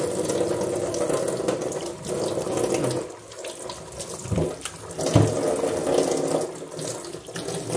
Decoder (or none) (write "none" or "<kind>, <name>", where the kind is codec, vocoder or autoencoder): none